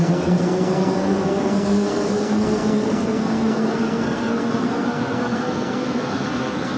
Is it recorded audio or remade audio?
remade